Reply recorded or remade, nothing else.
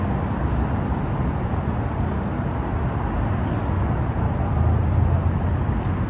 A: recorded